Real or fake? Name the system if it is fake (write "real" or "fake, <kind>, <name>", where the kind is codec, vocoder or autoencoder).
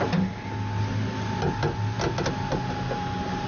real